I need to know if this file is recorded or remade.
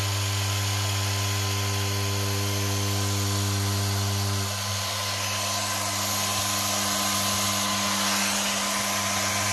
recorded